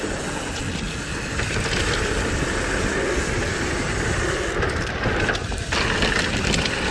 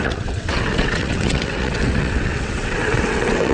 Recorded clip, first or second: first